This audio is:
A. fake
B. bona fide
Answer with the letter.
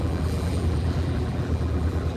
A